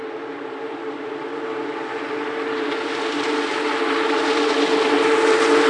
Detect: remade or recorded recorded